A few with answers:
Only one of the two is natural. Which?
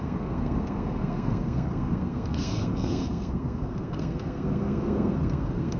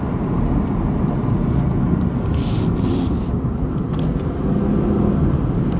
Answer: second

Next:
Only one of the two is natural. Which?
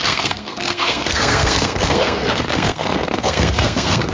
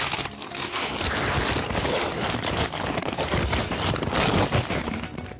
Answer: second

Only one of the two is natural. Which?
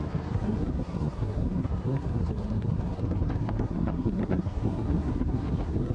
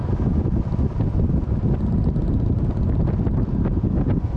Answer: second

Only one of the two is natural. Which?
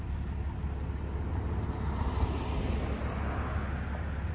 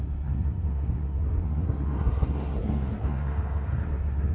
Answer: first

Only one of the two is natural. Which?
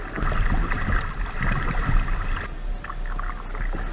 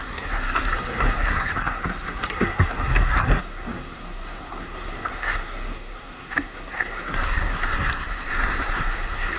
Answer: first